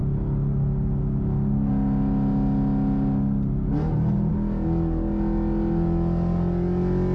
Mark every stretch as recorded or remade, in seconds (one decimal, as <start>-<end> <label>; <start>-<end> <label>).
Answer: 0.0-7.1 recorded